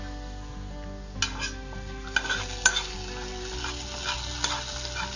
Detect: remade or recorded recorded